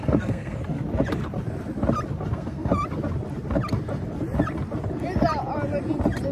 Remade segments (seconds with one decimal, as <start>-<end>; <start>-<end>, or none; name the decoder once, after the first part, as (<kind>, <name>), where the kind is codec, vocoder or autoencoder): 0.0-0.6 (codec, SNAC); 2.3-2.7